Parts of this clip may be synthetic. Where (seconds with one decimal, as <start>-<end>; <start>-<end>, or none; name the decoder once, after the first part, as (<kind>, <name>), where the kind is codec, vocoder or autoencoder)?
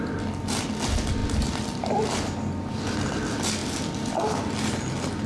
none